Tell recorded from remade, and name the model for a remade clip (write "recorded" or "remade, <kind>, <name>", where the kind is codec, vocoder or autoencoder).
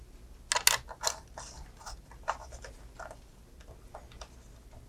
recorded